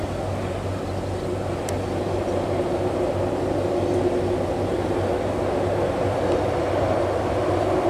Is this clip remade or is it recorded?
recorded